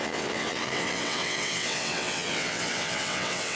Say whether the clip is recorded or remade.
remade